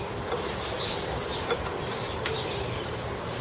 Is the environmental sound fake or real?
real